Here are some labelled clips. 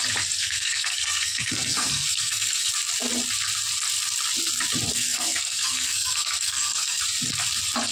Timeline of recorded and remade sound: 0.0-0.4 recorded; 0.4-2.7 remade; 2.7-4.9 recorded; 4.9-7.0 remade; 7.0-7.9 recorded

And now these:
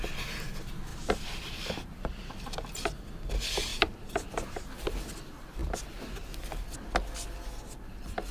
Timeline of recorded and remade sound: 0.0-0.9 recorded; 0.9-2.8 remade; 2.8-3.7 recorded; 3.7-4.6 remade; 4.6-8.3 recorded

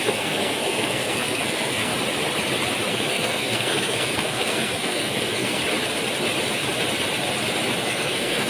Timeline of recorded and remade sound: 0.0-1.9 remade; 1.9-2.9 recorded; 2.9-5.6 remade; 5.6-7.8 recorded; 7.8-8.5 remade

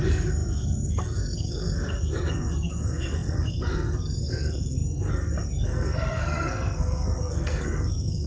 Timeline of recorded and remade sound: 0.0-8.3 remade

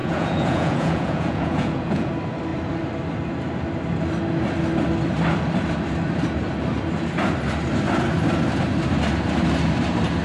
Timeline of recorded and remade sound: 0.0-2.1 remade; 2.1-10.2 recorded

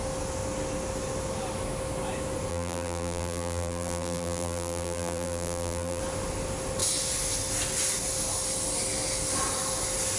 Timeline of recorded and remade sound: 0.0-2.5 recorded; 2.5-6.0 remade; 6.0-10.2 recorded

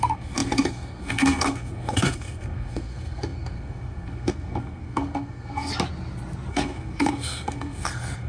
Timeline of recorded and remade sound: 0.0-5.7 remade; 5.7-6.5 recorded; 6.5-8.3 remade